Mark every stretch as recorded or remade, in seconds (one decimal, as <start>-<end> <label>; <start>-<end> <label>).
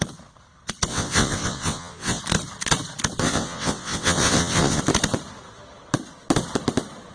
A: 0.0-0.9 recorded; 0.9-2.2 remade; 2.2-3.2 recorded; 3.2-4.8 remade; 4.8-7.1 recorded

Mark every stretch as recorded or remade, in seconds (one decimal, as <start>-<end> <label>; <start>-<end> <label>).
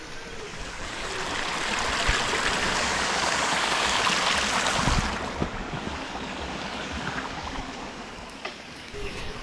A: 0.0-0.5 recorded; 0.5-1.1 remade; 1.1-2.6 recorded; 2.6-4.0 remade; 4.0-5.4 recorded; 5.4-9.4 remade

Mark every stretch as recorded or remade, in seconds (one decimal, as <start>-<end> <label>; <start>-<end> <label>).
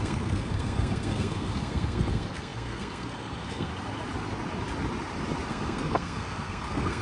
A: 0.0-3.7 remade; 3.7-5.5 recorded; 5.5-7.0 remade